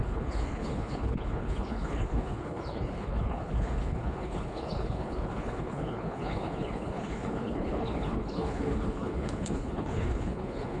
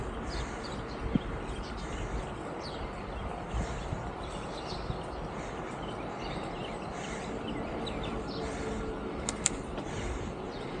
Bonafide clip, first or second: second